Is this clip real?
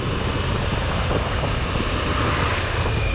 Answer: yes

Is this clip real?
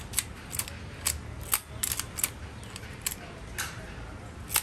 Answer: yes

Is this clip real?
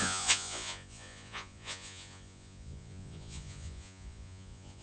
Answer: no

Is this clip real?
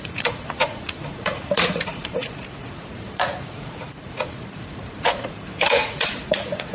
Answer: no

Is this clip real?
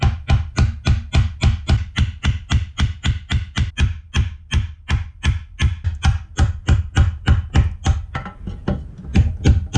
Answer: yes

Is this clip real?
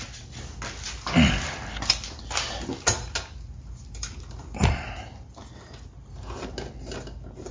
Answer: yes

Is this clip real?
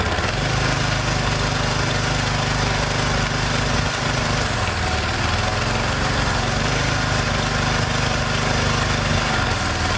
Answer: yes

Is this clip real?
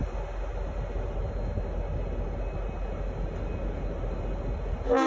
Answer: yes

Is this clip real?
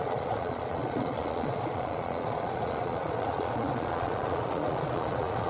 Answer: no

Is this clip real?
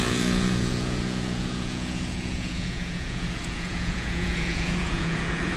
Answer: no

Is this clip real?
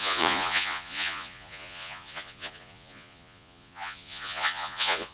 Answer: no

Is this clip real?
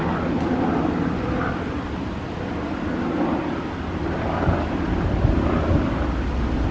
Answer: yes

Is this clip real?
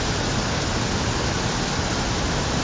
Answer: yes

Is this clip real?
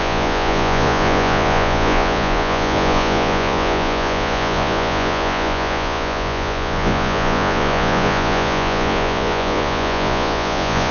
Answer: no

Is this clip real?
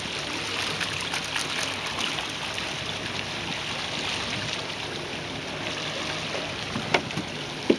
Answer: yes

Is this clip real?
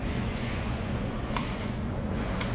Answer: no